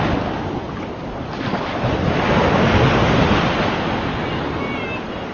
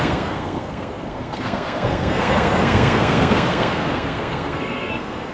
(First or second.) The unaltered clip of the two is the first